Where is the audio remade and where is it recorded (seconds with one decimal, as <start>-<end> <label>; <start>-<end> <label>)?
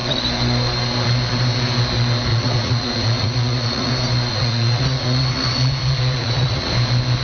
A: 0.0-2.3 recorded; 2.3-3.9 remade; 3.9-4.3 recorded; 4.3-6.7 remade; 6.7-7.2 recorded